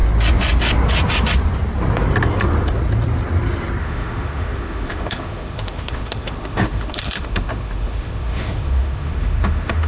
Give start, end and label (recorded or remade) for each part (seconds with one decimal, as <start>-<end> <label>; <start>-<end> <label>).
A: 0.0-3.8 recorded; 3.8-9.9 remade